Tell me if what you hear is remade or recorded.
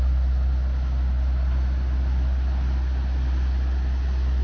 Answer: recorded